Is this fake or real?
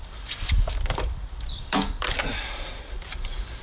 fake